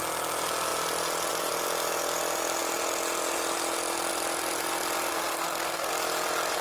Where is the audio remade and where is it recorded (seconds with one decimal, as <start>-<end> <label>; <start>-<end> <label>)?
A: 0.0-5.1 recorded; 5.1-5.9 remade; 5.9-6.6 recorded